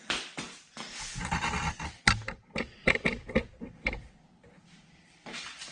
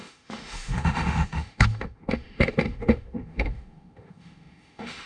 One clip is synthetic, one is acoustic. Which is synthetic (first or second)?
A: second